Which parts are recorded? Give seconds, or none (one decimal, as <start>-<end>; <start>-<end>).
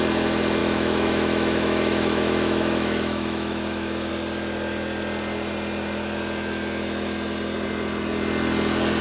0.0-0.6; 4.1-9.0